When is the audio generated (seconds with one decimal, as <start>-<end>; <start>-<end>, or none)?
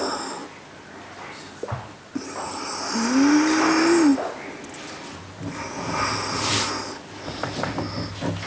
none